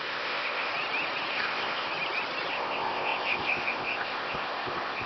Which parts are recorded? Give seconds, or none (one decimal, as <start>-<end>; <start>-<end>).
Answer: 0.7-1.3; 1.9-2.5